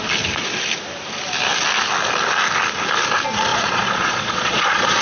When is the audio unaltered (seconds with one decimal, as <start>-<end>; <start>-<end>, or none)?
0.0-3.5